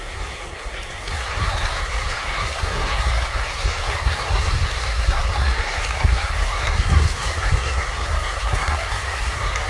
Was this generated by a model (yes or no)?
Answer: yes